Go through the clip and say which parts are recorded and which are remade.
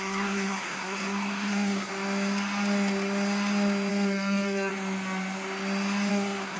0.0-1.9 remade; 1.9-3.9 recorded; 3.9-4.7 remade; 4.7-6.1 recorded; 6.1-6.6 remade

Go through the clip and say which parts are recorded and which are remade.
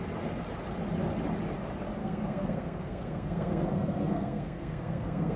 0.0-2.0 recorded; 2.0-5.4 remade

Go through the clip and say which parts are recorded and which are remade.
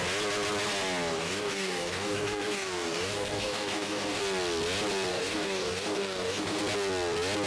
0.0-1.1 recorded; 1.1-4.2 remade; 4.2-5.1 recorded; 5.1-6.6 remade; 6.6-7.5 recorded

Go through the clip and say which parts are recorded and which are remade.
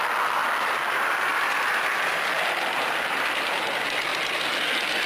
0.0-0.4 recorded; 0.4-3.5 remade; 3.5-5.1 recorded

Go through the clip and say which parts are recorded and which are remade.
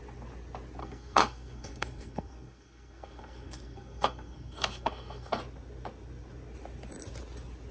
0.0-0.8 recorded; 0.8-5.4 remade; 5.4-7.7 recorded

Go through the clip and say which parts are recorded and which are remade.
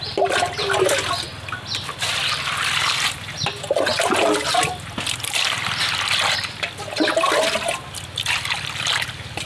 0.0-3.9 recorded; 3.9-4.6 remade; 4.6-9.5 recorded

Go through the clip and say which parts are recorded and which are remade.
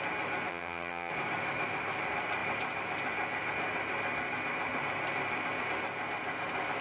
0.0-0.5 recorded; 0.5-1.1 remade; 1.1-6.8 recorded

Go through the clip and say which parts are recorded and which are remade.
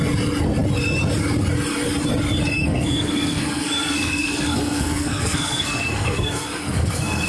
0.0-2.5 recorded; 2.5-7.3 remade